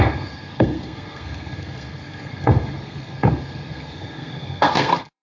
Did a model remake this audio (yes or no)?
yes